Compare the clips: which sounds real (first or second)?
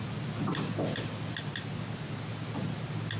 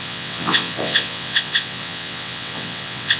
first